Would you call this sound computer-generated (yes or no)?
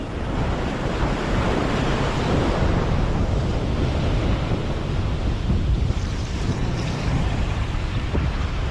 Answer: yes